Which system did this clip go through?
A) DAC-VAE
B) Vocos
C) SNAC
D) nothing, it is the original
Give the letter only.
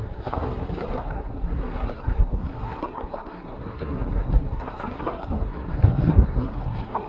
C